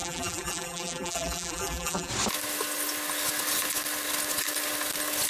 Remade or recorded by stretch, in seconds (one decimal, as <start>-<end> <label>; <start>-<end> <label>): 0.0-2.1 remade; 2.1-5.3 recorded